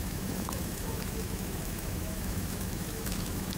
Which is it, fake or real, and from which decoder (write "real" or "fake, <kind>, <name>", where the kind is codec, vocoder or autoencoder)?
fake, autoencoder, DAC-VAE